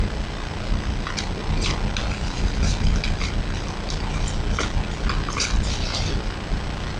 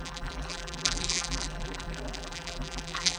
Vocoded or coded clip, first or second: second